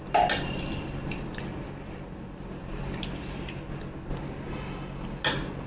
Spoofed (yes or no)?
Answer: no